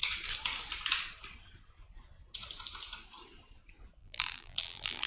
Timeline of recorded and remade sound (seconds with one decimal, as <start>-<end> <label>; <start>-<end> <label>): 0.0-4.0 recorded; 4.0-5.1 remade

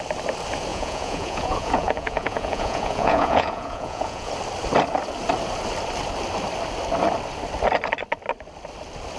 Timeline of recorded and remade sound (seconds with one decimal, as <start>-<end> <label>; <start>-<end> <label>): 0.0-0.7 recorded; 0.7-4.3 remade; 4.3-9.2 recorded

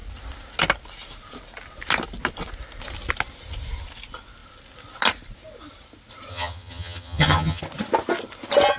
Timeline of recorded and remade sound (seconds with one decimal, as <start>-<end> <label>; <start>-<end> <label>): 0.0-6.3 recorded; 6.3-7.6 remade; 7.6-8.8 recorded